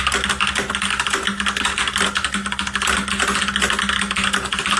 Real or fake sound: real